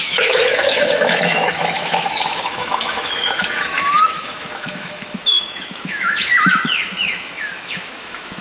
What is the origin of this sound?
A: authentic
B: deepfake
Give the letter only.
B